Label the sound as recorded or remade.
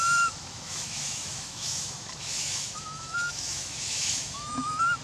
remade